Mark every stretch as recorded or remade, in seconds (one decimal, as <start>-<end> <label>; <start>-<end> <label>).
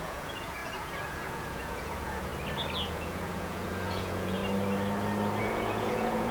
0.0-2.3 remade; 2.3-2.9 recorded; 2.9-4.4 remade; 4.4-5.4 recorded; 5.4-6.3 remade